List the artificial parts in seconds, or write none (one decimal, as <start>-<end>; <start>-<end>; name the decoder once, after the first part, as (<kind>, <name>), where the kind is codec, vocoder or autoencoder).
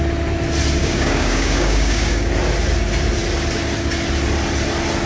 0.8-2.3 (codec, DAC)